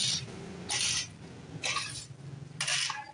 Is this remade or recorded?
recorded